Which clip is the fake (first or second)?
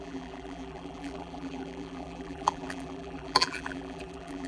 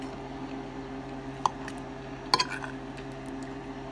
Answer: first